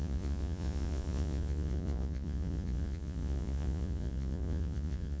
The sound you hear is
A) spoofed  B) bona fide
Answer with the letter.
A